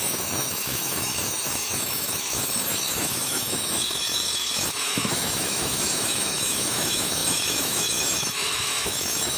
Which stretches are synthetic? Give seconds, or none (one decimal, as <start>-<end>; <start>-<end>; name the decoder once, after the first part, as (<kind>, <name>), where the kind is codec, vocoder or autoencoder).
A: 0.0-9.4 (autoencoder, DAC-VAE)